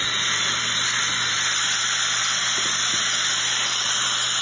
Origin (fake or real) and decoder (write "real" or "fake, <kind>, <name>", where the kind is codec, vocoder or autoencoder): real